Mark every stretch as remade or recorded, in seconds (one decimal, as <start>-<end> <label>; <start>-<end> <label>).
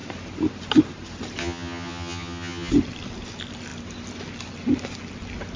0.0-1.4 recorded; 1.4-2.7 remade; 2.7-5.6 recorded